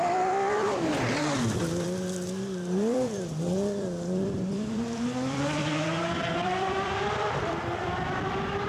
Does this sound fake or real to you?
fake